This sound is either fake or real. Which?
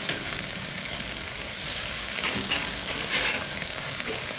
fake